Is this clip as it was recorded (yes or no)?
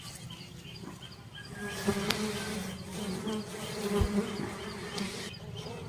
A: yes